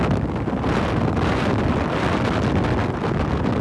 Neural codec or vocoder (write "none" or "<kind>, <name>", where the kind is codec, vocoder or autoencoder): none